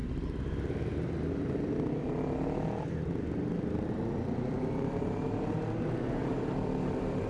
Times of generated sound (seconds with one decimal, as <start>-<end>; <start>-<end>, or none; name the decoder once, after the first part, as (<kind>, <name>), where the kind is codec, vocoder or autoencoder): 6.2-7.3 (vocoder, BigVGAN v2)